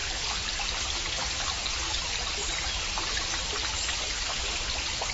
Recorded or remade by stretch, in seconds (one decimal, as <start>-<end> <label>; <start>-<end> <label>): 0.0-5.1 recorded